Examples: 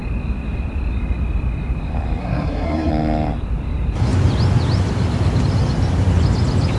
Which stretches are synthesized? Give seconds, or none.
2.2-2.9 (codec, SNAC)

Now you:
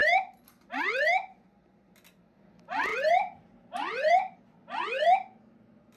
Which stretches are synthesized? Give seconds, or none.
2.9-4.4 (vocoder, BigVGAN v2)

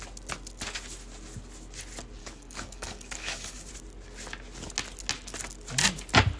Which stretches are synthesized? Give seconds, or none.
2.2-3.7 (codec, DAC)

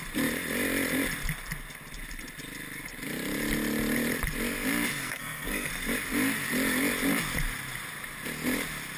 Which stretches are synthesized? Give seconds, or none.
4.9-5.7 (codec, SNAC)

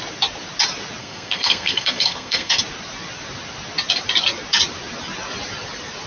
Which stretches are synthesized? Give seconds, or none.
1.0-2.6 (codec, SNAC)

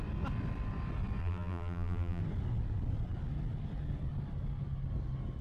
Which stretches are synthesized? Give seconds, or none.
1.2-2.2 (vocoder, BigVGAN v2)

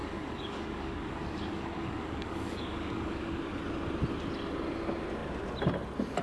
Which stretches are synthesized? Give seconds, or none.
0.0-3.4 (codec, DAC)